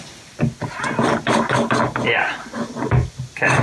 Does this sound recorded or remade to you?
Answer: recorded